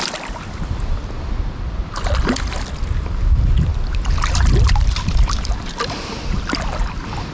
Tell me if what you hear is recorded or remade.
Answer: recorded